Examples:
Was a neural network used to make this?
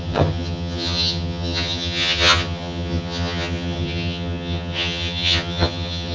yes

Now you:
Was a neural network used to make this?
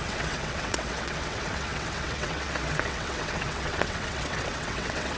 yes